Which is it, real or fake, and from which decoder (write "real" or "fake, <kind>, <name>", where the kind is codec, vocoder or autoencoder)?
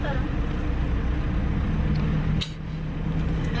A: real